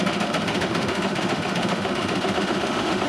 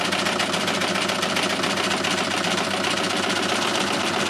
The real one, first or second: second